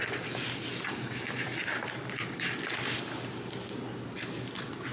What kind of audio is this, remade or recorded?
recorded